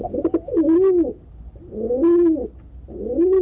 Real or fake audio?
real